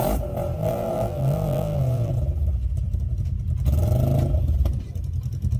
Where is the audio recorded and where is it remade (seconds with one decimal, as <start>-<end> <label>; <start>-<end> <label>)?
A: 0.0-0.6 recorded; 0.6-2.1 remade; 2.1-5.6 recorded